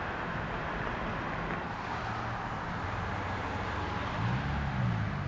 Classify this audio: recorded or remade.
recorded